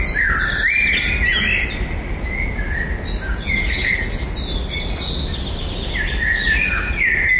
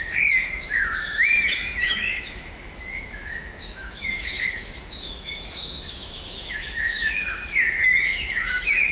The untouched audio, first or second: first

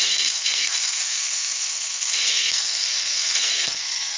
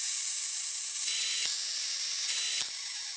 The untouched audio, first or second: second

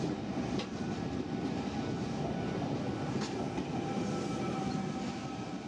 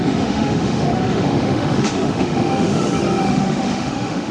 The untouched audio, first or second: first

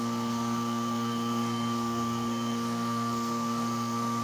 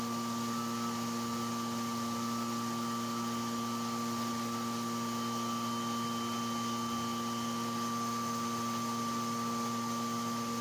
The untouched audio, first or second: second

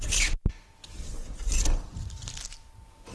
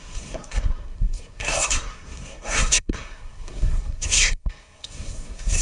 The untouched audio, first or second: first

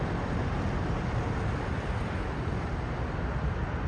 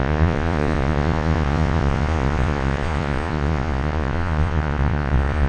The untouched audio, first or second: first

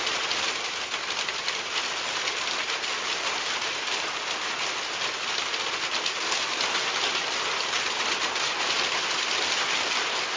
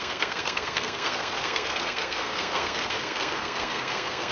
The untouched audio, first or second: first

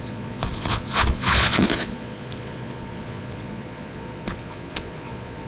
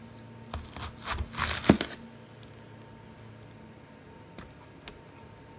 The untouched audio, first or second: second